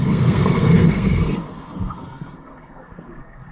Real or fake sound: fake